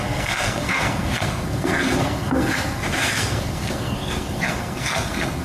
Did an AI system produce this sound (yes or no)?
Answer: yes